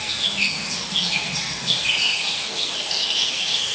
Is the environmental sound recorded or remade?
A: remade